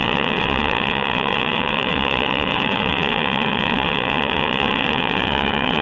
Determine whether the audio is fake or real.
fake